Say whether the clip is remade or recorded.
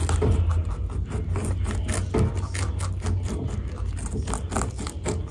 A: recorded